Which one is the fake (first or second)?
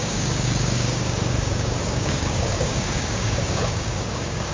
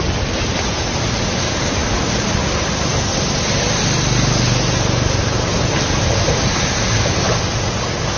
first